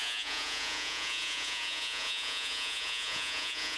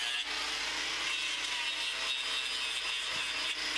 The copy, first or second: first